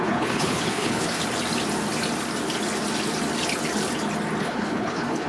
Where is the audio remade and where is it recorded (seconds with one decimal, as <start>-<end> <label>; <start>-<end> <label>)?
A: 0.0-1.2 remade; 1.2-4.4 recorded; 4.4-5.3 remade

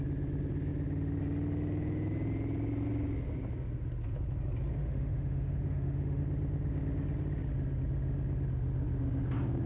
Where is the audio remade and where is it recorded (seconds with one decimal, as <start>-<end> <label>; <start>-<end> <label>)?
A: 0.0-4.8 recorded; 4.8-6.2 remade; 6.2-9.7 recorded

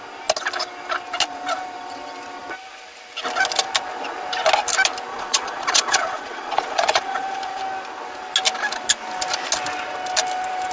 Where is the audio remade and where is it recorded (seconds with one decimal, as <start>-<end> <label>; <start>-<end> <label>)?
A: 0.0-5.1 recorded; 5.1-7.6 remade; 7.6-10.7 recorded

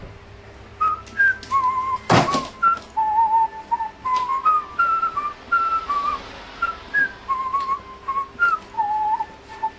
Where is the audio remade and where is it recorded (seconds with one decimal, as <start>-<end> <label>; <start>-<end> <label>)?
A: 0.0-9.8 recorded

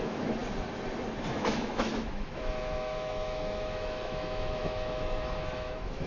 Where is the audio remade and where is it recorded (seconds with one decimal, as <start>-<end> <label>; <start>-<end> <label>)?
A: 0.0-0.4 remade; 0.4-1.3 recorded; 1.3-6.1 remade

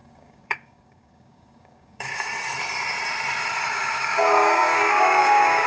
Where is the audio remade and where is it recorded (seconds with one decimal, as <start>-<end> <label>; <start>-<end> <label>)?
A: 0.0-2.1 remade; 2.1-3.7 recorded; 3.7-5.7 remade

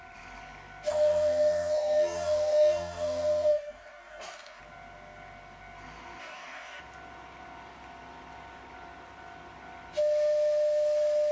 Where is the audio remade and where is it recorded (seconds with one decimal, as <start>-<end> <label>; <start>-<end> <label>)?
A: 0.0-0.9 recorded; 0.9-4.6 remade; 4.6-6.2 recorded; 6.2-6.8 remade; 6.8-11.3 recorded

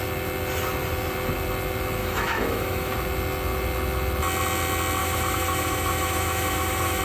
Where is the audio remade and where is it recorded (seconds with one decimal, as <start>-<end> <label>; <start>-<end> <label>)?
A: 0.0-2.0 recorded; 2.0-2.9 remade; 2.9-5.0 recorded; 5.0-7.0 remade